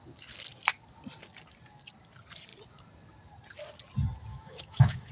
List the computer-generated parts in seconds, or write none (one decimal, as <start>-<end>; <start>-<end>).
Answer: 4.3-5.1